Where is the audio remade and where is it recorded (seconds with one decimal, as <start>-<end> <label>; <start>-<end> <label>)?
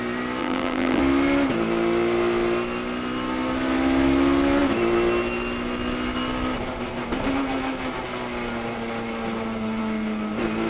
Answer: 0.0-0.4 recorded; 0.4-1.0 remade; 1.0-10.7 recorded